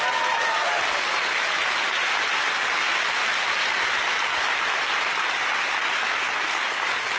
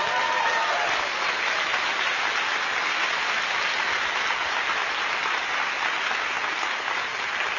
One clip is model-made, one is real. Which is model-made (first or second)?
first